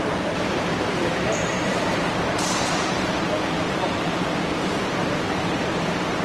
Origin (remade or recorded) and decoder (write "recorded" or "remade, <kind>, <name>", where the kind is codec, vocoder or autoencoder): remade, vocoder, BigVGAN v2